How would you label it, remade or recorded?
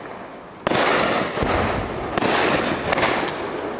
recorded